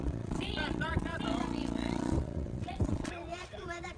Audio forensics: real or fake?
fake